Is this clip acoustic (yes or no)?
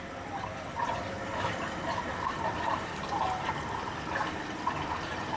yes